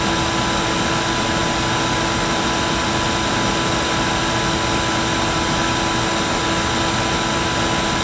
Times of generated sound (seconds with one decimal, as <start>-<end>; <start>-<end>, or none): none

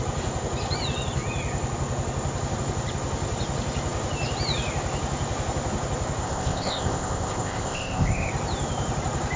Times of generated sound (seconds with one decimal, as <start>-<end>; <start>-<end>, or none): 6.2-8.3

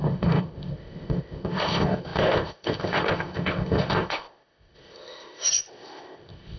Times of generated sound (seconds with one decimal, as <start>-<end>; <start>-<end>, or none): 0.0-6.6

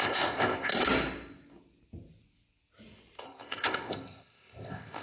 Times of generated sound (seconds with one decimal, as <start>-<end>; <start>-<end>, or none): 0.0-0.7; 3.2-5.0

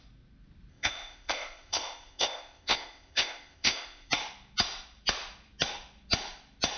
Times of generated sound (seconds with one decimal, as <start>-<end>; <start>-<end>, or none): 0.7-4.1

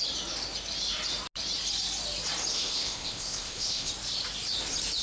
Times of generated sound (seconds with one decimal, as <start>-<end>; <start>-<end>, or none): 2.5-3.9